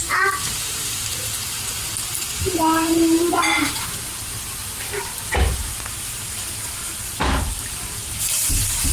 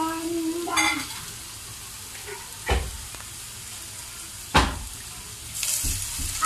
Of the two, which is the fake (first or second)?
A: first